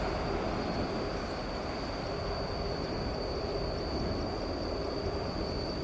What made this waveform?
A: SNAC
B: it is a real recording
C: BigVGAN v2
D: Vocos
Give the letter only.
B